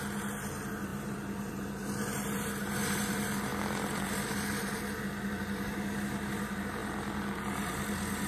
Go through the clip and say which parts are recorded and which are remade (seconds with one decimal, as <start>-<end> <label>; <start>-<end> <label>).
0.0-8.3 recorded

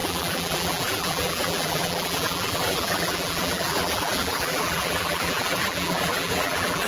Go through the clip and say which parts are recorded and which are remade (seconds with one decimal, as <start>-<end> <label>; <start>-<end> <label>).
0.0-6.9 remade

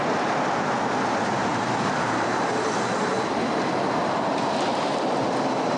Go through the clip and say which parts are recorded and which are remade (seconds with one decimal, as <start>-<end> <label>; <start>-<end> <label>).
0.0-1.5 recorded; 1.5-5.0 remade; 5.0-5.8 recorded

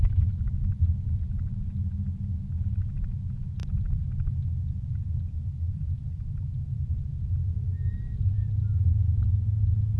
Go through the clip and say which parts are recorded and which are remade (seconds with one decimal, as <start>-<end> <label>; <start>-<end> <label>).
0.0-3.6 recorded; 3.6-8.3 remade; 8.3-10.0 recorded

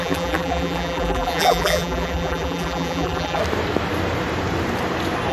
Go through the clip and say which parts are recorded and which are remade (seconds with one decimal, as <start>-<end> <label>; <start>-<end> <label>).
0.0-3.4 remade; 3.4-5.3 recorded

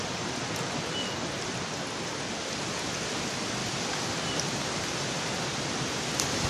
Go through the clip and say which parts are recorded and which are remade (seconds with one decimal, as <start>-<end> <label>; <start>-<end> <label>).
0.0-6.5 recorded

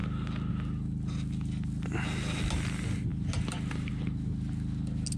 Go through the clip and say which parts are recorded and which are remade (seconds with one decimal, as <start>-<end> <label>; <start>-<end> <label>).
0.0-3.1 recorded; 3.1-3.9 remade; 3.9-5.2 recorded